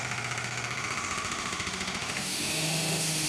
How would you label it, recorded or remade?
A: remade